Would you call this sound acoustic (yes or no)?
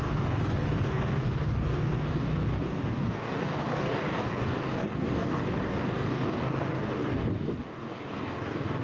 no